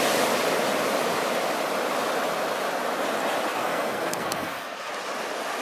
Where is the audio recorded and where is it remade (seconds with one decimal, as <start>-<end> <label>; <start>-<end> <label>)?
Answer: 0.0-3.5 recorded; 3.5-4.9 remade; 4.9-5.6 recorded